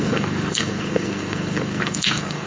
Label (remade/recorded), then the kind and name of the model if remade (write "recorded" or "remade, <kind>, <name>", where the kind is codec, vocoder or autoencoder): remade, codec, SNAC